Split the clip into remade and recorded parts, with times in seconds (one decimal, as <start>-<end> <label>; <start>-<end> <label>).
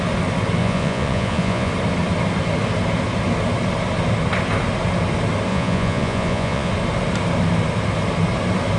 0.0-0.6 recorded; 0.6-1.7 remade; 1.7-5.5 recorded; 5.5-6.7 remade; 6.7-8.8 recorded